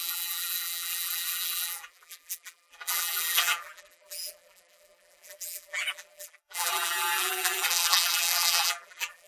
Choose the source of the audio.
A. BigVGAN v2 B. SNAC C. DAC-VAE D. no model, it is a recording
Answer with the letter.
A